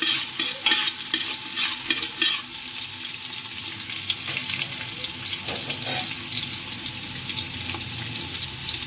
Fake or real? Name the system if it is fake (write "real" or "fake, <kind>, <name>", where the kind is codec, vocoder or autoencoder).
real